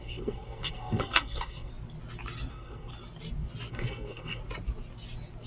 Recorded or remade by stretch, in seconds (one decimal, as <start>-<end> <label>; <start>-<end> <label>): 0.0-1.7 remade; 1.7-2.5 recorded; 2.5-2.9 remade; 2.9-3.7 recorded; 3.7-4.4 remade; 4.4-5.5 recorded